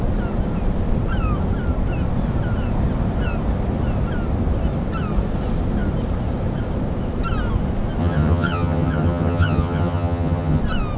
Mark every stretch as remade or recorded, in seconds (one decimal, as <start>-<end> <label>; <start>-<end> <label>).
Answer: 0.0-8.0 recorded; 8.0-10.6 remade; 10.6-11.0 recorded